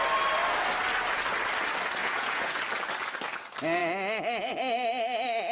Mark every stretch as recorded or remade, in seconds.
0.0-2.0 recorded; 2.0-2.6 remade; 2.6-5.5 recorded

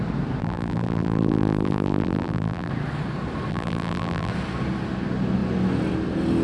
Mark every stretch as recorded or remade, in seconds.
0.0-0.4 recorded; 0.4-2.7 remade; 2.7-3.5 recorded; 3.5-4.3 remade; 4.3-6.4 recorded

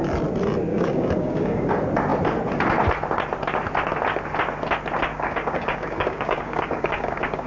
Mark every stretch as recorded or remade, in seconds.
0.0-0.7 recorded; 0.7-1.7 remade; 1.7-5.1 recorded; 5.1-7.5 remade